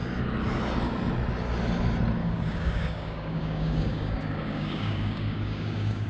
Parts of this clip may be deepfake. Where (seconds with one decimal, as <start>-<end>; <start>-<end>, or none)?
2.2-6.1